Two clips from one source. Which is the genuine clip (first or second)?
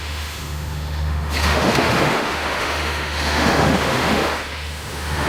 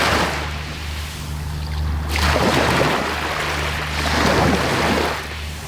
second